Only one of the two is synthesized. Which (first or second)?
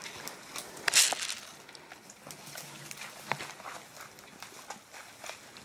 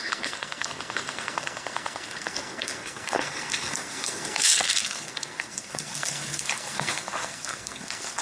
second